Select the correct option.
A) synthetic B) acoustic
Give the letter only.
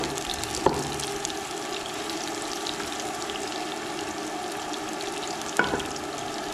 B